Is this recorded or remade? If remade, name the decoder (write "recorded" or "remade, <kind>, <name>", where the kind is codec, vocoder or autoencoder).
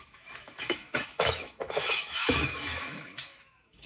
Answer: remade, autoencoder, DAC-VAE